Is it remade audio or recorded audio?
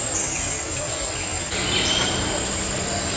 recorded